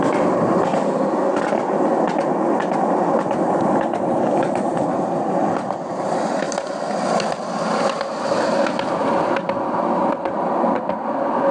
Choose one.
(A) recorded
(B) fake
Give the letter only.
A